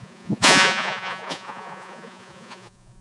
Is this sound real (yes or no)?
no